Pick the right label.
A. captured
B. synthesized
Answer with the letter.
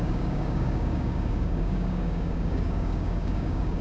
B